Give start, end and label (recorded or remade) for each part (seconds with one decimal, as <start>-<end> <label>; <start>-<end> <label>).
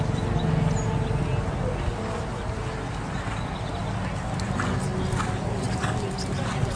0.0-6.8 recorded